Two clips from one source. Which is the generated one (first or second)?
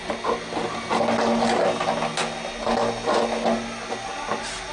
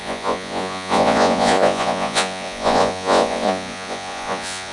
second